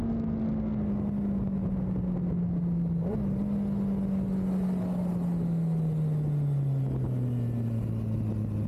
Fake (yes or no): no